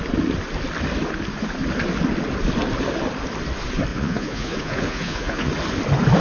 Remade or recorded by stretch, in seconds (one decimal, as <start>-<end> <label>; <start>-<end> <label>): 0.0-3.9 recorded; 3.9-5.5 remade; 5.5-6.2 recorded